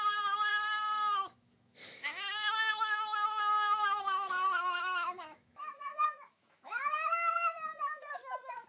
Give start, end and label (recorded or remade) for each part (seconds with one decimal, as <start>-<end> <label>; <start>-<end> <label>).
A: 0.0-8.7 remade